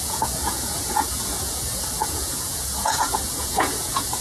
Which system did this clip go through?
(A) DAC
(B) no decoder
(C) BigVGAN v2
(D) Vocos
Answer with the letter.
D